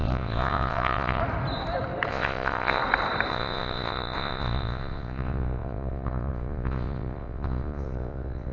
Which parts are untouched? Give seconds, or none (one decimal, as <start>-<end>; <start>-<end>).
1.2-2.1; 2.8-3.3